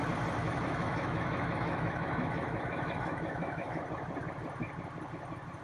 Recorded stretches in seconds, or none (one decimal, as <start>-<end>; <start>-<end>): 0.0-0.4; 3.8-5.6